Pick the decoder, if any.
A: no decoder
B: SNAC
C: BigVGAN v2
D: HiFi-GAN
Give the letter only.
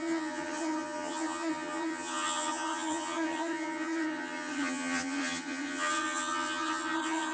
D